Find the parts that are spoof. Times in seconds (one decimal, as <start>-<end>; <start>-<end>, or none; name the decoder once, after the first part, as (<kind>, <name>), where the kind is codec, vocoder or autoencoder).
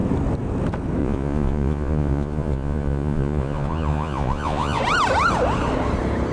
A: 1.0-4.8 (vocoder, Vocos)